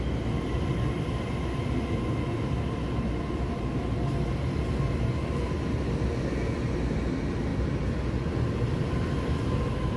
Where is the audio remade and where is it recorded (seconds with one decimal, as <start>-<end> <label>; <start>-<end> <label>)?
0.0-10.0 recorded